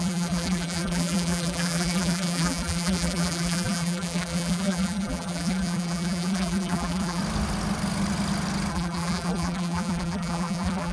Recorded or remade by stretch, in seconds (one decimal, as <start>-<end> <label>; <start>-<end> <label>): 0.0-7.2 remade; 7.2-8.7 recorded; 8.7-10.9 remade